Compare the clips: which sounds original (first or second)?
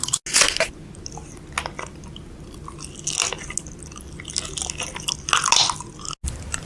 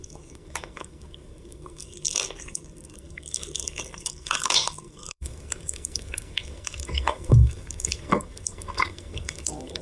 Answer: first